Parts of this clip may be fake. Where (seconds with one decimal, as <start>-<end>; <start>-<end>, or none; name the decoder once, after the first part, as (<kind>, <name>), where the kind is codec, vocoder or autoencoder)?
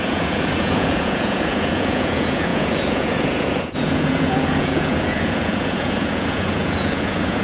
0.0-7.4 (vocoder, Vocos)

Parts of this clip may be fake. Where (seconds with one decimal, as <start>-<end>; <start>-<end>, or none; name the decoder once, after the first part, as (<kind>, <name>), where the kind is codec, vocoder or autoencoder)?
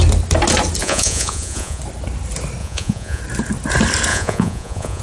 0.8-1.8 (vocoder, Vocos); 2.6-3.2; 4.1-5.0